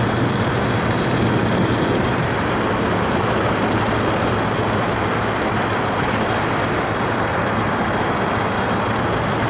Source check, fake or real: fake